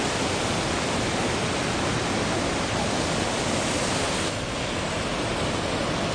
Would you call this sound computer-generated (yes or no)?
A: no